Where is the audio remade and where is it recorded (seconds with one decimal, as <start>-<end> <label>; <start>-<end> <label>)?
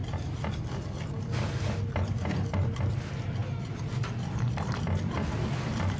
0.0-6.0 recorded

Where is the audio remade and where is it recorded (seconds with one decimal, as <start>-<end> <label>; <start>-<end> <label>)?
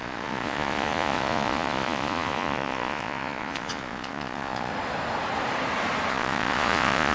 0.0-4.7 remade; 4.7-6.1 recorded; 6.1-7.1 remade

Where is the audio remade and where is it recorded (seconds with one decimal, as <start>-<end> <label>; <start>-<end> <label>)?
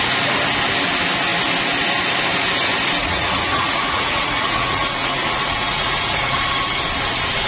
0.0-3.0 recorded; 3.0-6.4 remade; 6.4-7.5 recorded